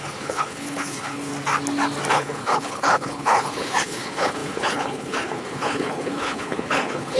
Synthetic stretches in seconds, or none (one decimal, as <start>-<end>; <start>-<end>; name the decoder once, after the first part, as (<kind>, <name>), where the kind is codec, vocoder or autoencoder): 0.0-1.3 (codec, HILCodec); 2.1-7.2